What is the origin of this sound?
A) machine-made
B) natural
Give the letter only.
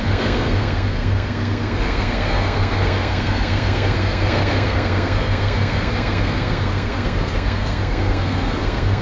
A